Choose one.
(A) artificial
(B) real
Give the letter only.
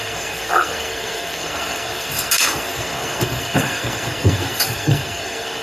A